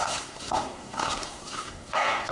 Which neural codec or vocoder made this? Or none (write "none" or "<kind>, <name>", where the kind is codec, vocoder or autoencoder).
codec, SNAC